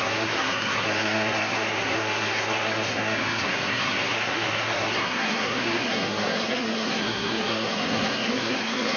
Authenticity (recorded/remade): remade